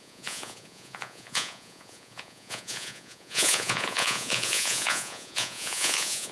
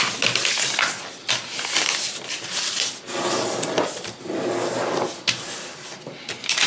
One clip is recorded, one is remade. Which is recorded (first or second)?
second